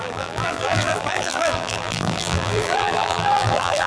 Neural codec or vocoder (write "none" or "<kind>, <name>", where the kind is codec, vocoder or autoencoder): vocoder, BigVGAN v2